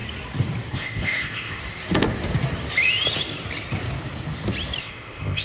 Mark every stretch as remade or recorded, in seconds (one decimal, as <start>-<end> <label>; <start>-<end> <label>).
0.0-0.7 recorded; 0.7-1.6 remade; 1.6-4.8 recorded; 4.8-5.4 remade